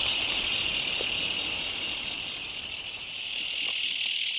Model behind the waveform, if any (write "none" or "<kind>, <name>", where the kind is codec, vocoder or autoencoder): none